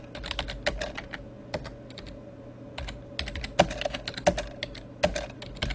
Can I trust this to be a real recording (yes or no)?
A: yes